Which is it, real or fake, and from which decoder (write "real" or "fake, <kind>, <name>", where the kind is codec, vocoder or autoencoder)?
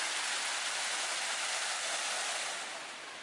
real